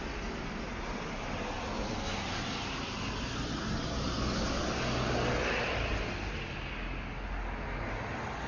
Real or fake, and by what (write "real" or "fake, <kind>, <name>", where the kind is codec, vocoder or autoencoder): real